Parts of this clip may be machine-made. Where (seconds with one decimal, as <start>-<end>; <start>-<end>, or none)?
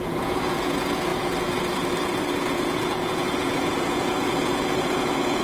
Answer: 0.0-1.1; 2.4-5.4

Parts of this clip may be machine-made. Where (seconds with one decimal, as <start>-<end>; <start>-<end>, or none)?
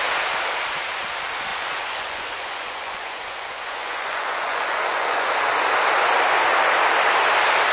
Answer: 1.5-5.3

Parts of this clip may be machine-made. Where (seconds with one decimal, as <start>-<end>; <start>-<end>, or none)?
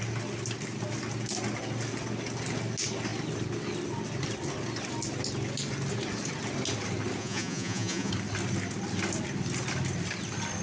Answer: 7.2-8.1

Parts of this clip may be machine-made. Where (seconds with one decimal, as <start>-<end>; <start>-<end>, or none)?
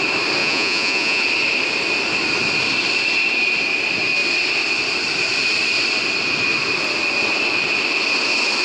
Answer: 0.4-1.2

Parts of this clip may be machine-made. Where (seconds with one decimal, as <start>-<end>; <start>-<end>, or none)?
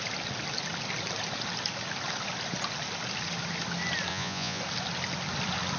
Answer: 4.1-4.6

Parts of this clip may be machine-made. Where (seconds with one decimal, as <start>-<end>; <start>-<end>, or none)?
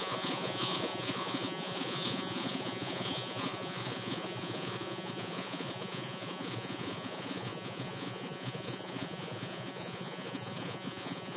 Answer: 0.0-11.4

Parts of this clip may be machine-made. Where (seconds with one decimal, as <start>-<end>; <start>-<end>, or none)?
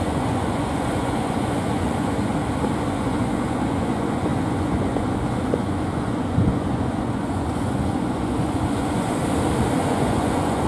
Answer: 0.0-2.3; 2.9-9.2; 9.7-10.7